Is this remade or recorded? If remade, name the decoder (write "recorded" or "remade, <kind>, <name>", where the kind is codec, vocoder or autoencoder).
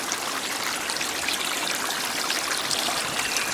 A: recorded